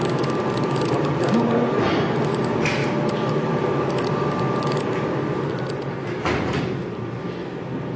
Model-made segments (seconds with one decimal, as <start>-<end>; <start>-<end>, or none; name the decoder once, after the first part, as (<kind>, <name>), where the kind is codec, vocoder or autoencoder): none